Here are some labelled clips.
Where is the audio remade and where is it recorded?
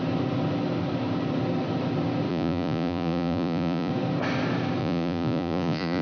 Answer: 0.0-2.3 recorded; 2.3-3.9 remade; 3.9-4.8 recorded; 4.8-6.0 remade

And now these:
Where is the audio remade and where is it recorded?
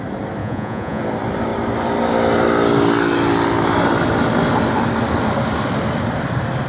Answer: 0.0-0.4 recorded; 0.4-1.0 remade; 1.0-6.7 recorded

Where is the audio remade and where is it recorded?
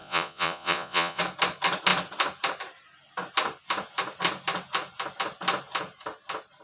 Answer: 0.0-1.2 remade; 1.2-6.6 recorded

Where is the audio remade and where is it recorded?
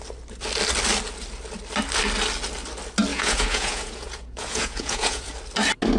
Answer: 0.0-3.1 recorded; 3.1-5.3 remade; 5.3-6.0 recorded